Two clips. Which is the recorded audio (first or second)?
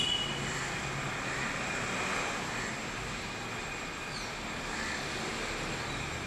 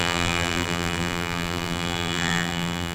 first